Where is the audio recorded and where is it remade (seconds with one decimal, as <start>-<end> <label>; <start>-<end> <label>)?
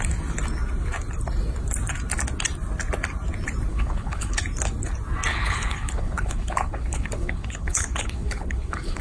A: 0.0-3.7 recorded; 3.7-4.4 remade; 4.4-5.3 recorded; 5.3-9.0 remade